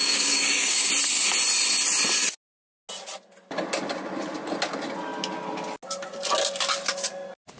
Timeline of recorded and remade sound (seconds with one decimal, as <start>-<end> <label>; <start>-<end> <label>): 0.0-0.9 remade; 0.9-7.6 recorded